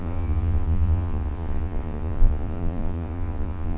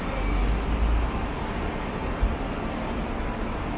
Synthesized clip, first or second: first